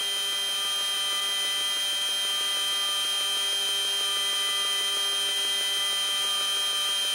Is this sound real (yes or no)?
yes